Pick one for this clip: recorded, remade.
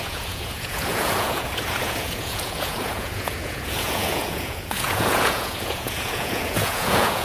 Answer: remade